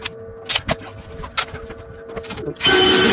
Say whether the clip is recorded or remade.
recorded